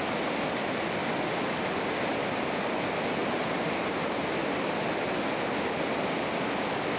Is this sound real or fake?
real